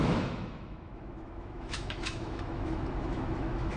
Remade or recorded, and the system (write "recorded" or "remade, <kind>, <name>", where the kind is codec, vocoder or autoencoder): remade, autoencoder, DAC-VAE